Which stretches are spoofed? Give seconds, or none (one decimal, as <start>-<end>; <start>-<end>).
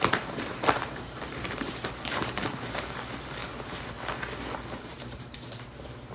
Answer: 0.0-3.4; 4.8-6.1